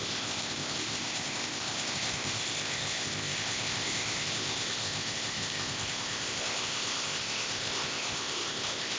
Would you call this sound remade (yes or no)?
yes